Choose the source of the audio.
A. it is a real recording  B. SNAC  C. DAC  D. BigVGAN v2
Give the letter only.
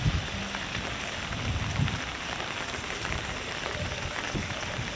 A